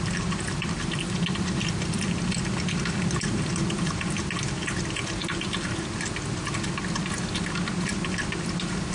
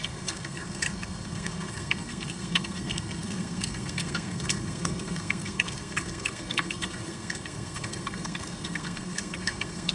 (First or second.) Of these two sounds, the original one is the first